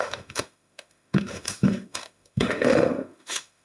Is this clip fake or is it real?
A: fake